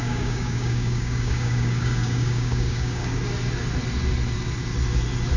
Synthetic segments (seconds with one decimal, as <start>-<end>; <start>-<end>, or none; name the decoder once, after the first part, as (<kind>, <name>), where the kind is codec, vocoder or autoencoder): 0.0-3.0 (codec, DAC)